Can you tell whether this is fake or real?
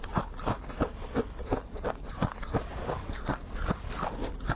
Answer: real